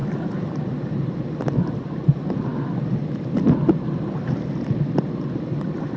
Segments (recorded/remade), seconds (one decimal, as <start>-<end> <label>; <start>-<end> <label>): 0.0-6.0 recorded